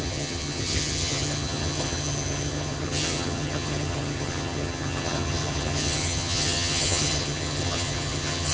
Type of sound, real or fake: fake